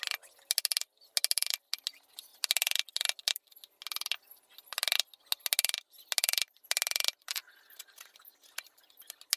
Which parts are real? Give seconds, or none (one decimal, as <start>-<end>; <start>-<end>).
0.0-9.4